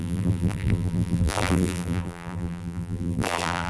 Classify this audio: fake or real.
fake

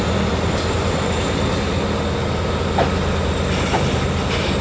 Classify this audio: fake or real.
real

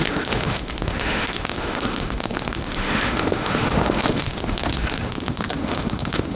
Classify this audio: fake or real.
fake